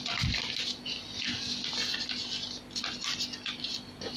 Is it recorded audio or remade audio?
recorded